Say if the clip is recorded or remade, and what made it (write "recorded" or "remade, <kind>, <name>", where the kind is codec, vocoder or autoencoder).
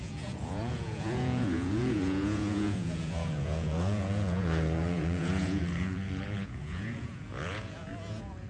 remade, vocoder, Vocos